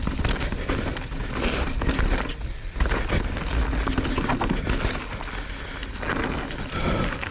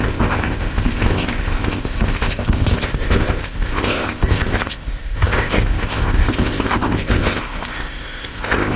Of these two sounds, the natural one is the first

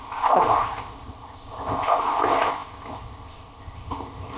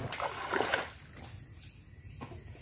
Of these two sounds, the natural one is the second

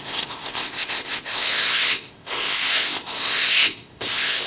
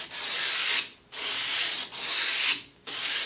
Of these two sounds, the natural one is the second